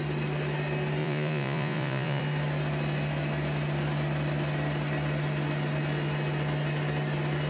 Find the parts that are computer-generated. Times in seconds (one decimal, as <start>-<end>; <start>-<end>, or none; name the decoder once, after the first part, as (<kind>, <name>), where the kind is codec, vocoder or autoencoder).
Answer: 1.0-2.2 (vocoder, Vocos)